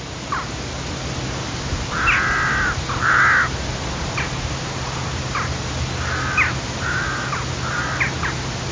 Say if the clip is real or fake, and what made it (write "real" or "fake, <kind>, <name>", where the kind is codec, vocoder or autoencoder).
real